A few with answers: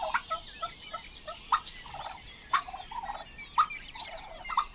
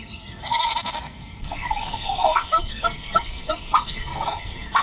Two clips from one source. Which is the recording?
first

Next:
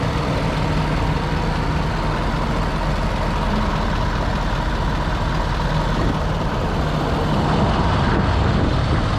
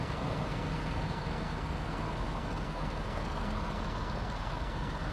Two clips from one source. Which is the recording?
first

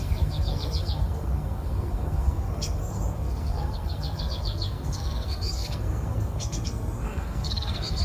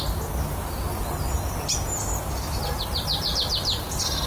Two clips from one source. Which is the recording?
second